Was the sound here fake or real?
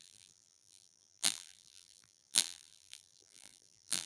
fake